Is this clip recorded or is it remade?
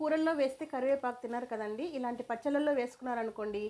recorded